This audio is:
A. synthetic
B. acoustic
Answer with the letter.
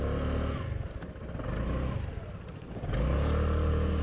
B